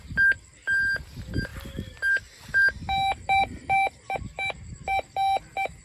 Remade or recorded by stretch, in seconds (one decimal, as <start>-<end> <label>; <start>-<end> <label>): 0.0-5.8 recorded

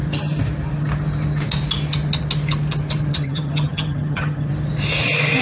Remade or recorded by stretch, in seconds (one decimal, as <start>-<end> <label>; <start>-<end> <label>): 0.0-3.1 recorded; 3.1-4.5 remade; 4.5-5.4 recorded

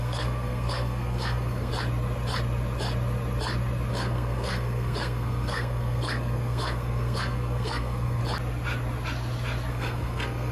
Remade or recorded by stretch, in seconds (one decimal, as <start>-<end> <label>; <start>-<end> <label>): 0.0-1.7 remade; 1.7-3.9 recorded; 3.9-8.2 remade; 8.2-9.7 recorded; 9.7-10.5 remade

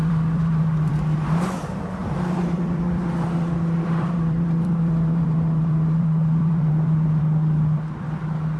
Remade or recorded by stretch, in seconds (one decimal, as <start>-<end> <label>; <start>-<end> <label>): 0.0-1.2 remade; 1.2-2.0 recorded; 2.0-7.2 remade; 7.2-8.6 recorded

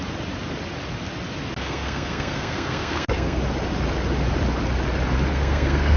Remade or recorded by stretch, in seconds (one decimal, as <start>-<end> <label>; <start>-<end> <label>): 0.0-1.6 recorded; 1.6-3.4 remade; 3.4-5.3 recorded; 5.3-6.0 remade